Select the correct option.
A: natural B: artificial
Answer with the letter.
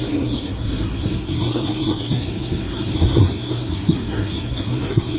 B